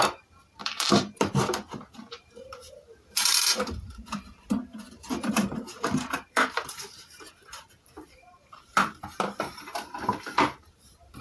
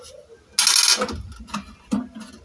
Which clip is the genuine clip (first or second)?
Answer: second